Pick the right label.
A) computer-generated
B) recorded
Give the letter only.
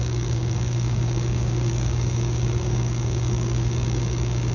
A